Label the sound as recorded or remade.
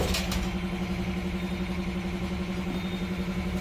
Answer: recorded